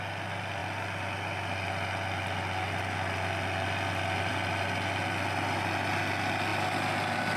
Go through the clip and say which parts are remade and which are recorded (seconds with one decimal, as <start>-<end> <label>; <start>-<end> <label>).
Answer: 0.0-7.4 recorded

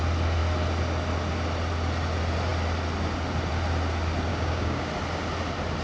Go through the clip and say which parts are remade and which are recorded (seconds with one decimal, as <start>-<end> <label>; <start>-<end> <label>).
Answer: 0.0-4.3 recorded; 4.3-4.9 remade; 4.9-5.8 recorded

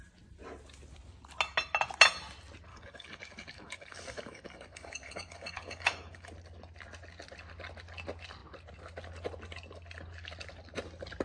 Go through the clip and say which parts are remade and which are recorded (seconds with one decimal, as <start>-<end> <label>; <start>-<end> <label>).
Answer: 0.0-2.7 recorded; 2.7-6.3 remade; 6.3-11.2 recorded